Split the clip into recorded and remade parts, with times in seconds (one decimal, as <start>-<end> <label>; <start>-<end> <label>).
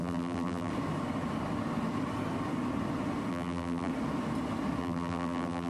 0.0-0.7 remade; 0.7-3.3 recorded; 3.3-3.9 remade; 3.9-4.8 recorded; 4.8-5.7 remade